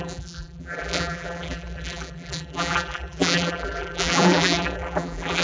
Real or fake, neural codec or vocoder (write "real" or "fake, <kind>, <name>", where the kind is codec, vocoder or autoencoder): fake, vocoder, BigVGAN v2